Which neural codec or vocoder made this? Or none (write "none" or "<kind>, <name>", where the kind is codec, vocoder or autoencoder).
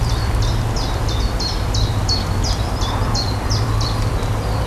vocoder, BigVGAN v2